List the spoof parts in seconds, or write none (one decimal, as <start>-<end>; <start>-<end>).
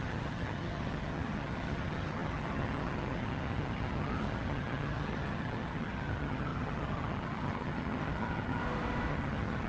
0.0-8.6; 9.1-9.7